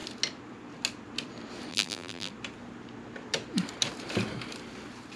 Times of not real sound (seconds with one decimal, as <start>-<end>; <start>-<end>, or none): 1.7-2.3

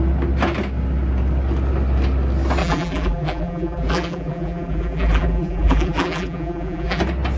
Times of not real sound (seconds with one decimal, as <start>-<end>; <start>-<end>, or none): 2.6-7.0

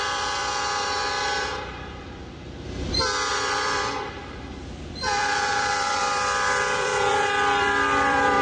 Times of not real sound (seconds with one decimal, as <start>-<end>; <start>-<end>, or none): 0.0-0.4; 3.3-8.4

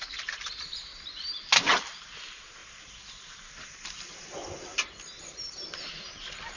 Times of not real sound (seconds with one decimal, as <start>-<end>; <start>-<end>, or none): 2.6-3.7

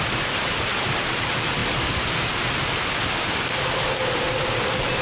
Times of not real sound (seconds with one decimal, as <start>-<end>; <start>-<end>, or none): none

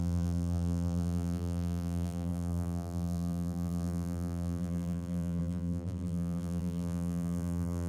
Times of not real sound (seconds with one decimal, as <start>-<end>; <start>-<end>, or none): 0.0-7.9